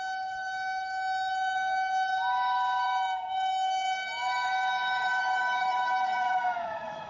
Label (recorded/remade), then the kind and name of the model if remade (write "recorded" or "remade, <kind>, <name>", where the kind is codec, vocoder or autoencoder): remade, autoencoder, DAC-VAE